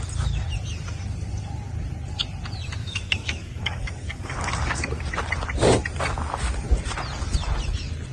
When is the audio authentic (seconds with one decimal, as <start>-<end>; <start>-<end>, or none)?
0.0-2.8; 5.0-8.1